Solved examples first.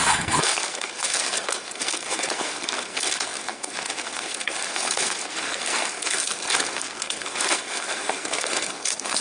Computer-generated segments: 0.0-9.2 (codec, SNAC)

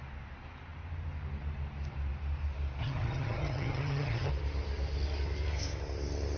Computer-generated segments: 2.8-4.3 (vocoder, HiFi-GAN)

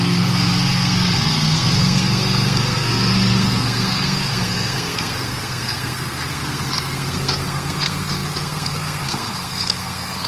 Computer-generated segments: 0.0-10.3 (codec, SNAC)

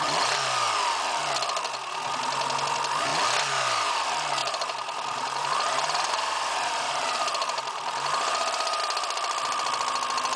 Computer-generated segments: 4.4-8.8 (vocoder, BigVGAN v2)

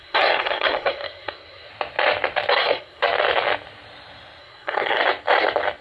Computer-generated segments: 0.0-1.7 (codec, SNAC); 2.5-3.0; 4.4-5.0

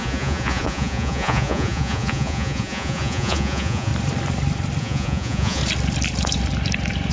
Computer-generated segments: 0.0-3.9 (vocoder, Vocos); 4.8-5.6

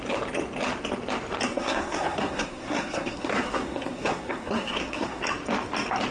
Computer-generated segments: 1.5-5.2 (codec, SNAC)

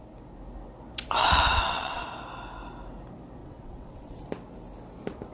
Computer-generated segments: 1.2-2.0 (vocoder, WaveNeXt); 3.4-4.2